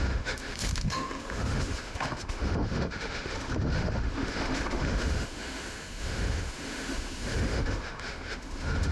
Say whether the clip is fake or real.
fake